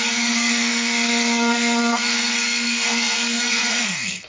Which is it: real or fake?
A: fake